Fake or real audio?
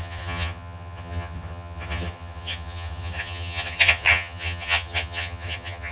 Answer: fake